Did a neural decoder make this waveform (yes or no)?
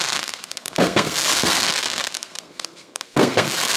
yes